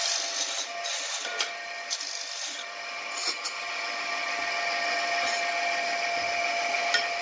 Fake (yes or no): no